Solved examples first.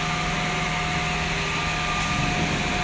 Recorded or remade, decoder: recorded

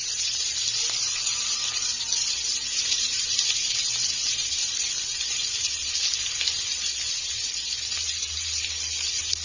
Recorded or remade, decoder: recorded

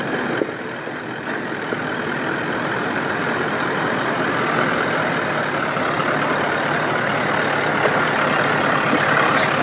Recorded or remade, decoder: recorded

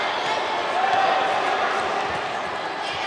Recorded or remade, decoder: recorded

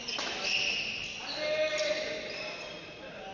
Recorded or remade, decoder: recorded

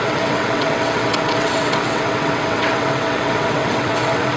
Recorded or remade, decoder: remade, vocoder, WaveNeXt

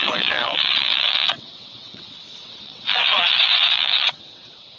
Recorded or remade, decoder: remade, vocoder, WaveNeXt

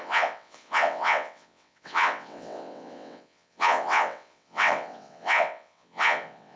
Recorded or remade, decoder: remade, vocoder, WaveNeXt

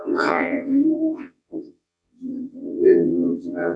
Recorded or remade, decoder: remade, vocoder, WaveNeXt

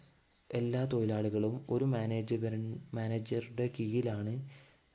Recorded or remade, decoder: recorded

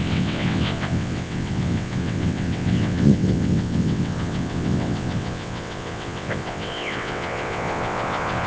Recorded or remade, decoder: remade, vocoder, WaveNeXt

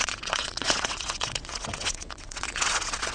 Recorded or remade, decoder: remade, vocoder, WaveNeXt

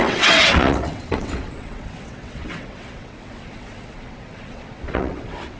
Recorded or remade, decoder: remade, vocoder, WaveNeXt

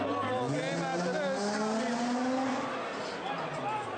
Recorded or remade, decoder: recorded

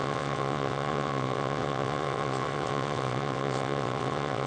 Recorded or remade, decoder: remade, vocoder, WaveNeXt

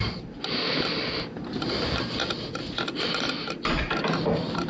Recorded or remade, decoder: recorded